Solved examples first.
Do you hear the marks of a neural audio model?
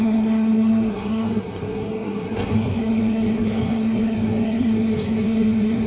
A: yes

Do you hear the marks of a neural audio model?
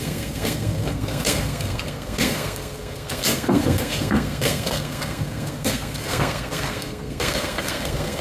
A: yes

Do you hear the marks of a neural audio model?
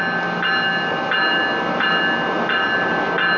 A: no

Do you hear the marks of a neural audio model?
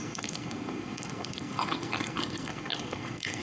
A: yes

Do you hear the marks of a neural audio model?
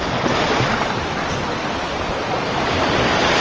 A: no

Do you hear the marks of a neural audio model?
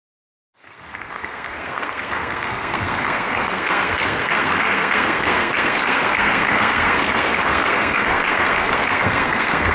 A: yes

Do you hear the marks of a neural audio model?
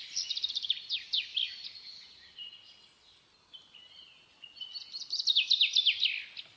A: no